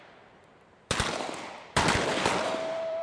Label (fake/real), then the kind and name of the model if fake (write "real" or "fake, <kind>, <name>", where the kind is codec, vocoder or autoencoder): fake, vocoder, BigVGAN v2